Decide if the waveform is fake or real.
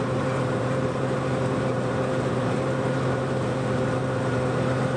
fake